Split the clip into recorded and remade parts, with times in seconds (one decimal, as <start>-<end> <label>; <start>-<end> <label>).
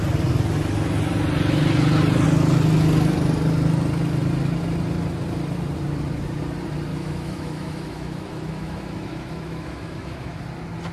0.0-6.9 recorded; 6.9-10.4 remade; 10.4-10.9 recorded